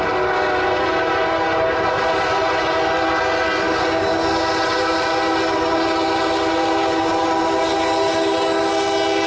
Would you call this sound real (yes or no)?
yes